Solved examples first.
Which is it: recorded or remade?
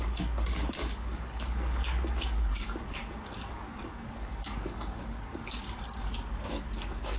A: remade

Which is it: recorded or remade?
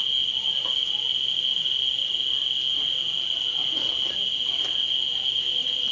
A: recorded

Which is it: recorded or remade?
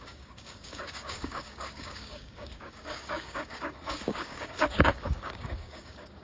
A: remade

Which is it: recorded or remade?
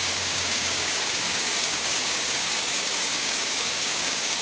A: remade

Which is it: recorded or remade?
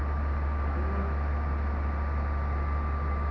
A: recorded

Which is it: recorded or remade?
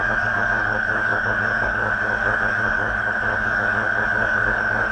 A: remade